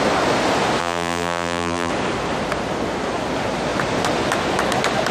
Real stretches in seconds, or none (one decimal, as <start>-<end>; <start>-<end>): 0.0-0.8; 1.9-5.1